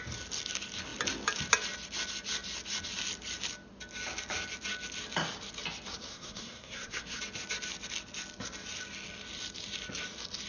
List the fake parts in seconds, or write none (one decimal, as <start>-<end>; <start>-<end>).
6.1-7.2